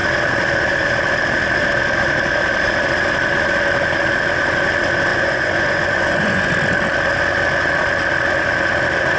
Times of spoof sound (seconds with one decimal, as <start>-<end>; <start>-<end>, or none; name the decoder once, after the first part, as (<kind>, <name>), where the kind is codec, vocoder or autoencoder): 5.1-6.5 (vocoder, Vocos)